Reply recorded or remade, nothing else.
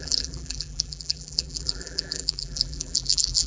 remade